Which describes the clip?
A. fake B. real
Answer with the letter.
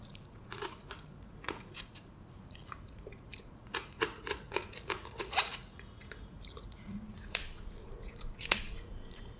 A